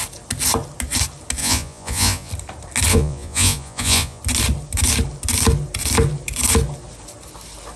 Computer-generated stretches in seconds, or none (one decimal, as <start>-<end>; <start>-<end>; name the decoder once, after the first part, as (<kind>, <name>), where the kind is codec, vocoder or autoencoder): 1.4-2.3 (vocoder, Vocos); 2.9-4.2